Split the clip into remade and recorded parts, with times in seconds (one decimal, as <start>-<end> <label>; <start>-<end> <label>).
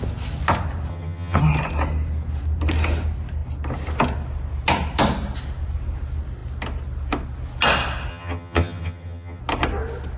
0.0-0.9 recorded; 0.9-1.4 remade; 1.4-8.1 recorded; 8.1-9.4 remade; 9.4-10.2 recorded